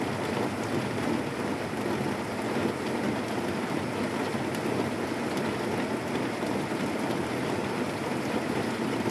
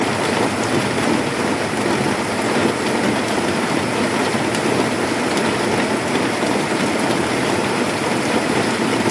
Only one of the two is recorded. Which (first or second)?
first